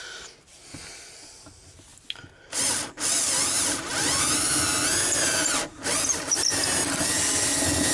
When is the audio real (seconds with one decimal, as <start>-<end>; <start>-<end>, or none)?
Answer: 0.0-7.9